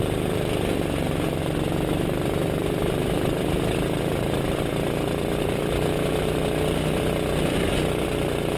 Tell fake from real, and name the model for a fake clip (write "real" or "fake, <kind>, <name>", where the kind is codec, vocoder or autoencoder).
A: real